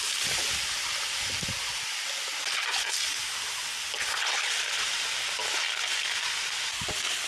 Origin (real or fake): real